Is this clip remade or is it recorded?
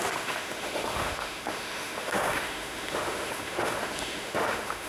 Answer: remade